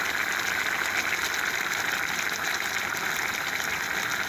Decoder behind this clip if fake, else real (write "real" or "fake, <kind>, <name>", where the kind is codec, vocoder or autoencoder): real